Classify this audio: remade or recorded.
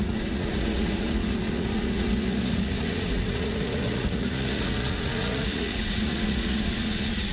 remade